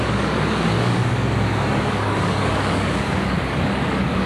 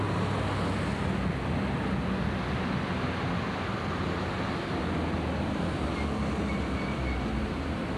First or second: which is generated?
first